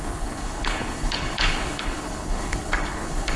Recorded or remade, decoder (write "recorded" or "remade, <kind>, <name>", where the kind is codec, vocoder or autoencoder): remade, codec, HILCodec